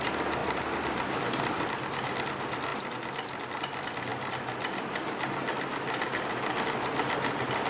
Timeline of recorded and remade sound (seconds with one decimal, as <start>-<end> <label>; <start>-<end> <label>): 0.0-0.4 recorded; 0.4-1.4 remade; 1.4-4.1 recorded; 4.1-5.2 remade; 5.2-7.7 recorded